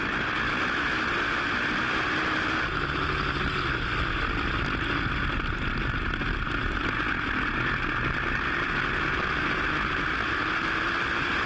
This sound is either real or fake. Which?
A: real